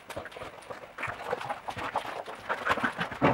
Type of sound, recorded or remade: recorded